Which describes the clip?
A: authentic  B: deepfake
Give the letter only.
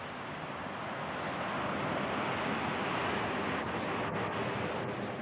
A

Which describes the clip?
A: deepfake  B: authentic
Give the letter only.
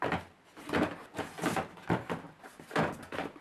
B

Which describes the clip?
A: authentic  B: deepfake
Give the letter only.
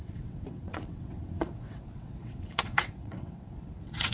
B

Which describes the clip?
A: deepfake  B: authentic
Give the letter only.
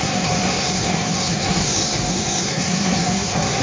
A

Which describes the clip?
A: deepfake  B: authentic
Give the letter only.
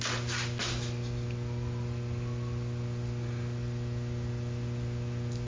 B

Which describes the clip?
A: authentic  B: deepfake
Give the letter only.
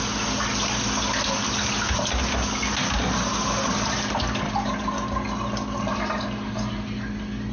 A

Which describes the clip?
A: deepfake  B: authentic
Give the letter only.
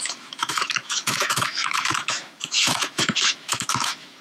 A